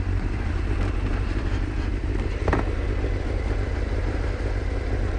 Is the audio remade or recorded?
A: recorded